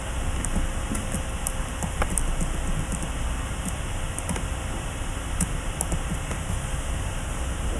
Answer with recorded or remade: recorded